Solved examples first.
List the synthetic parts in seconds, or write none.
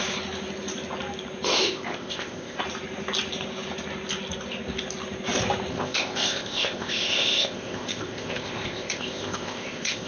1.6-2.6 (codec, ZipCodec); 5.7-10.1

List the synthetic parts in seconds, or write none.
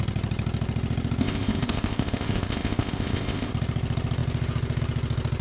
1.2-3.5 (codec, ZipCodec)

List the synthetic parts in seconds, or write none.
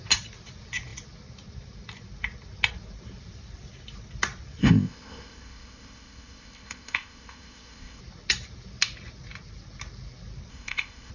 4.6-8.0 (codec, ZipCodec); 10.5-11.1